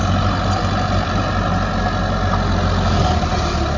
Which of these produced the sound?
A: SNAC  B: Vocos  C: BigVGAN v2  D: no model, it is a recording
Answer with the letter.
D